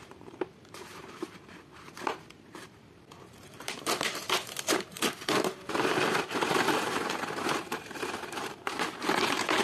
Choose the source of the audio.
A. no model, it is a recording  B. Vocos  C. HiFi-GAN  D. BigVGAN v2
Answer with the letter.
D